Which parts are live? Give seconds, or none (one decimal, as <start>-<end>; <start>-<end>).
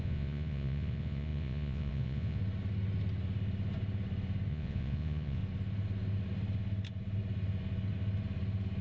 2.4-4.5; 5.4-8.8